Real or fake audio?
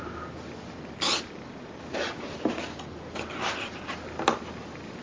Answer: real